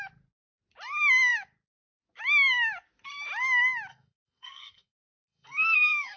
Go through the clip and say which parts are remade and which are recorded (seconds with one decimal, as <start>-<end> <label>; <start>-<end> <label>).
0.0-3.9 recorded; 3.9-6.2 remade